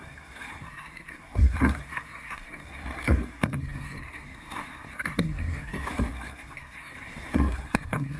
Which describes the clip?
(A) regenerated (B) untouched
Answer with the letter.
A